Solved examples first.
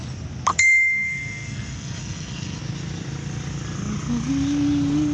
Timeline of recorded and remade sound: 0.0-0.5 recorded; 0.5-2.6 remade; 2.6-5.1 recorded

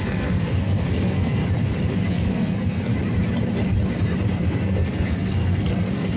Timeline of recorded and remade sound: 0.0-1.4 remade; 1.4-2.1 recorded; 2.1-2.9 remade; 2.9-4.3 recorded; 4.3-6.2 remade

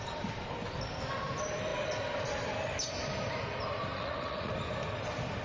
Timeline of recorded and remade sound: 0.0-3.9 recorded; 3.9-4.5 remade; 4.5-5.4 recorded